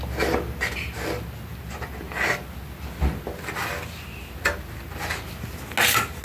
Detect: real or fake real